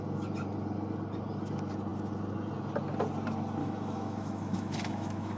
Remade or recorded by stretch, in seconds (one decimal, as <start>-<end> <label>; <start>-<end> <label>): 0.0-3.6 recorded; 3.6-5.4 remade